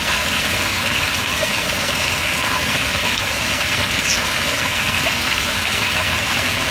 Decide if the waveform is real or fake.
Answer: fake